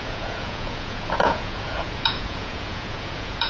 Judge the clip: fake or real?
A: fake